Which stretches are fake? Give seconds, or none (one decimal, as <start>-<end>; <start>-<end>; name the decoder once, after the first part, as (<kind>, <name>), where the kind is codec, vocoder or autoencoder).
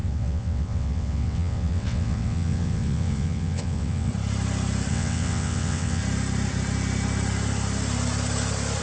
0.0-4.1 (vocoder, WaveNeXt); 4.9-6.0